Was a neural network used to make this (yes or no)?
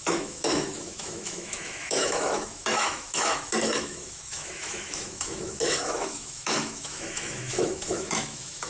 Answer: yes